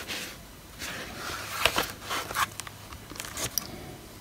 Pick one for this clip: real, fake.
real